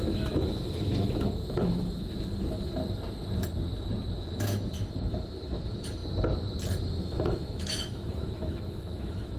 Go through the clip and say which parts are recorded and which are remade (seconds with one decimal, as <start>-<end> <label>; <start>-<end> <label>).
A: 0.0-2.8 remade; 2.8-4.2 recorded; 4.2-6.0 remade; 6.0-7.0 recorded; 7.0-9.4 remade